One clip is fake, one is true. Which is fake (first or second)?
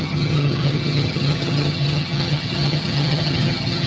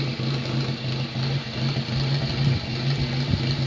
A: first